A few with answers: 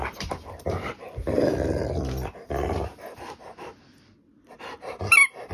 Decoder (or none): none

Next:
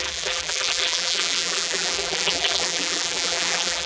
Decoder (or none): vocoder, BigVGAN v2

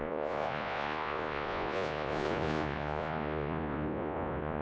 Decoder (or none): vocoder, Vocos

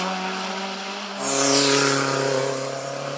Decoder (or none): none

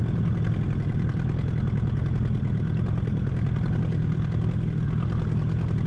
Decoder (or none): none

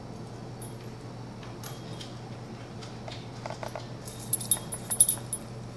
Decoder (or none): none